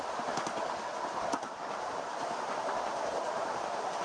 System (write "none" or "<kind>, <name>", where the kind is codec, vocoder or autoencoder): none